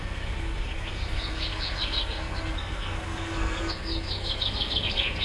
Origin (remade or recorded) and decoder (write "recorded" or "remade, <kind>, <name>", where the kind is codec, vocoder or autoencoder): remade, codec, SNAC